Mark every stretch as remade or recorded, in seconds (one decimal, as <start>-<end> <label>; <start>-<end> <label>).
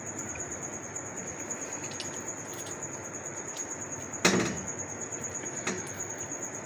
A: 0.0-6.7 recorded